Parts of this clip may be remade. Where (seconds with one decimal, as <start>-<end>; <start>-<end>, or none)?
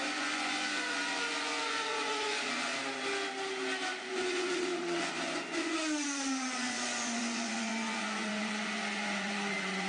0.0-2.7; 4.0-9.9